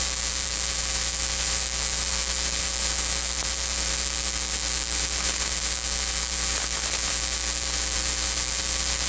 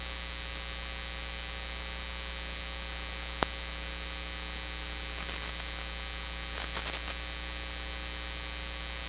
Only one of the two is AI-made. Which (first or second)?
first